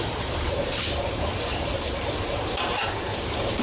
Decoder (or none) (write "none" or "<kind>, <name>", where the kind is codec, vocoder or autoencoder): vocoder, BigVGAN v2